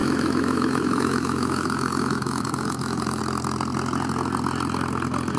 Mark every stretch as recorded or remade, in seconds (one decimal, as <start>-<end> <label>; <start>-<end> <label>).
0.0-3.2 remade; 3.2-5.4 recorded